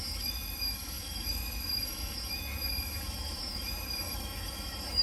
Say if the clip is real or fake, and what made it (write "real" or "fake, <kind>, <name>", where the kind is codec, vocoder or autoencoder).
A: fake, autoencoder, DAC-VAE